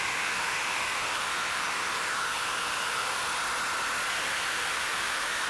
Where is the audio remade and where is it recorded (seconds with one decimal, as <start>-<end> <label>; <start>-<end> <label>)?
0.0-3.2 remade; 3.2-4.1 recorded; 4.1-5.5 remade